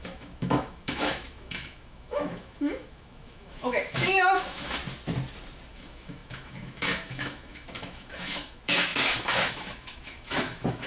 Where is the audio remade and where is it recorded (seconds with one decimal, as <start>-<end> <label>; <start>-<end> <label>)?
0.0-4.8 remade; 4.8-5.7 recorded; 5.7-10.9 remade